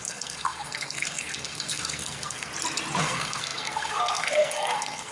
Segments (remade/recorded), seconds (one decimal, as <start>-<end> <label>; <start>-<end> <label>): 0.0-2.5 remade; 2.5-3.0 recorded; 3.0-5.1 remade